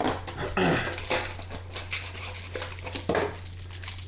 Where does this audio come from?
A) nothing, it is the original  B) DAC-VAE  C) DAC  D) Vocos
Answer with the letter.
A